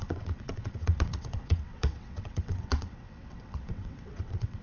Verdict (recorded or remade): remade